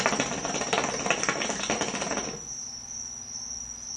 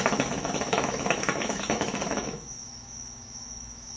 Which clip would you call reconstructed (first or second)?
second